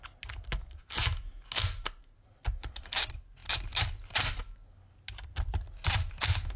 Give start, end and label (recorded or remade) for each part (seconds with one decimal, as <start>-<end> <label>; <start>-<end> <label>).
0.0-6.6 recorded